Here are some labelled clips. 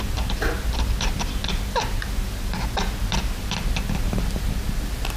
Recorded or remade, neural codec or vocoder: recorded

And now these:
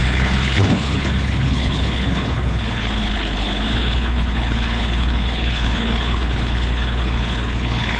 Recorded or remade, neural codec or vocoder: remade, codec, HILCodec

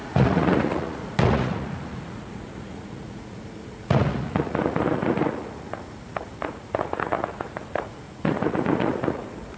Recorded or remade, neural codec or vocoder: remade, vocoder, Vocos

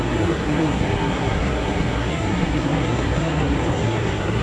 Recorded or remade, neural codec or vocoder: remade, codec, SNAC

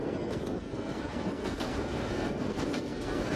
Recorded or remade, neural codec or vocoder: remade, codec, SNAC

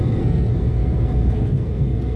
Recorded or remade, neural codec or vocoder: remade, codec, SNAC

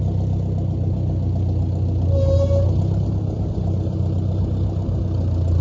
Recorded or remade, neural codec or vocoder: recorded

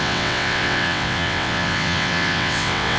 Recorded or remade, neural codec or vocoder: remade, vocoder, WaveNeXt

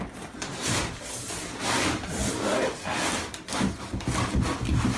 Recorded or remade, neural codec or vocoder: recorded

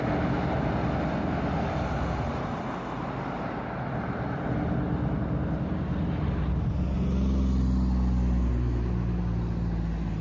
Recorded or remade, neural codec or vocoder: recorded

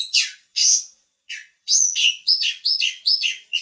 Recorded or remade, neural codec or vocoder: remade, vocoder, Vocos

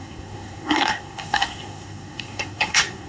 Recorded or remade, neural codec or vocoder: remade, codec, SNAC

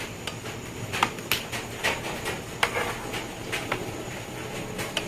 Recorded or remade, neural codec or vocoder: recorded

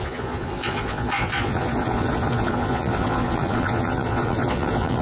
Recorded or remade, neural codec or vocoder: remade, vocoder, Vocos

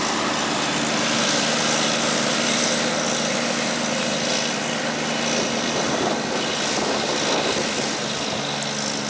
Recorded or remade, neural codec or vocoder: recorded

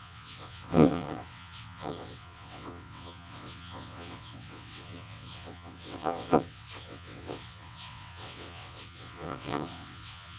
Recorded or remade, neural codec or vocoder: remade, vocoder, WaveNeXt